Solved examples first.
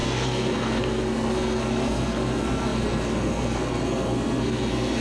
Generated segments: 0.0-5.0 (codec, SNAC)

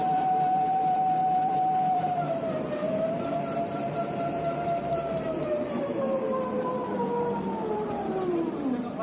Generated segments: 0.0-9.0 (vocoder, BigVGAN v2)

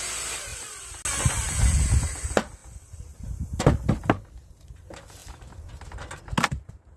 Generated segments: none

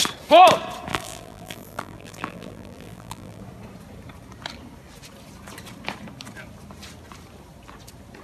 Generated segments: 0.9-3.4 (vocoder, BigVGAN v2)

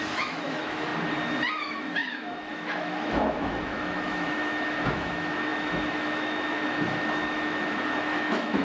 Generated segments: 0.0-0.9 (autoencoder, DAC-VAE); 1.5-8.6

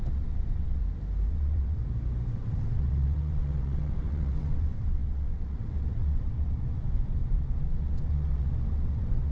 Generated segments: 0.0-0.8 (vocoder, WaveNeXt); 1.3-1.8; 2.3-9.3

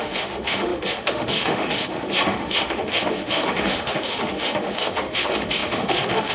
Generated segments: 0.0-6.3 (autoencoder, DAC-VAE)